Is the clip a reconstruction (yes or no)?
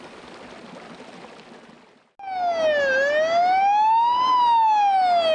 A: no